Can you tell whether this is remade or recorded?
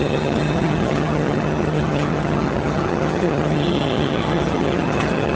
remade